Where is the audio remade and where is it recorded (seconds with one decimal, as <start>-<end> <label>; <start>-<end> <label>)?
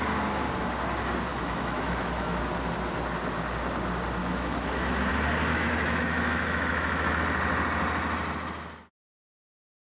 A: 0.0-1.3 recorded; 1.3-2.4 remade; 2.4-4.2 recorded; 4.2-5.1 remade; 5.1-5.5 recorded; 5.5-7.2 remade; 7.2-9.8 recorded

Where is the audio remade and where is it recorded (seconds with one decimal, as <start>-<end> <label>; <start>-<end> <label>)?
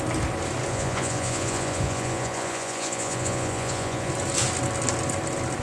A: 0.0-0.7 recorded; 0.7-4.1 remade; 4.1-5.6 recorded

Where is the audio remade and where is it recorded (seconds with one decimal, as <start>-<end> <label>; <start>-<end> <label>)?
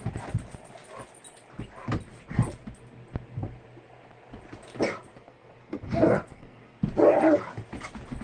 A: 0.0-5.1 recorded; 5.1-6.8 remade; 6.8-8.2 recorded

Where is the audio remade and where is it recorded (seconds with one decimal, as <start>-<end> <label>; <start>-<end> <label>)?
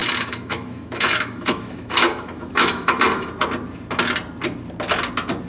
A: 0.0-3.3 remade; 3.3-5.5 recorded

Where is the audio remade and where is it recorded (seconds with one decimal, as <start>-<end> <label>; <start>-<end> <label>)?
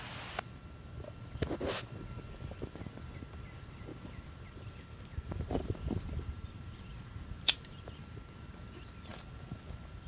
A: 0.0-3.9 recorded; 3.9-7.8 remade; 7.8-9.1 recorded; 9.1-10.1 remade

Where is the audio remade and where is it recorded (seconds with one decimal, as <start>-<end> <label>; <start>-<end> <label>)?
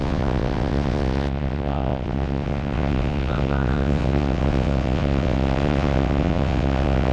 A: 0.0-7.1 remade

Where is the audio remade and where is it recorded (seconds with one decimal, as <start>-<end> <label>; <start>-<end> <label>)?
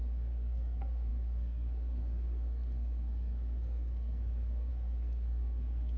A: 0.0-6.0 remade